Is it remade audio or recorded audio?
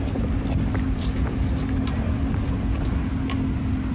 recorded